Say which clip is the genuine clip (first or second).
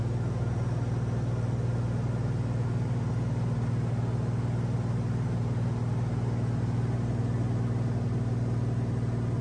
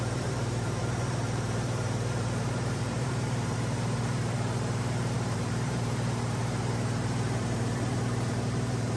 first